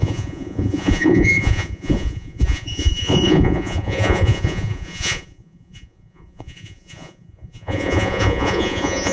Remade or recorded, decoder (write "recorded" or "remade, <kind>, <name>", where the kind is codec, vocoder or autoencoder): remade, vocoder, Vocos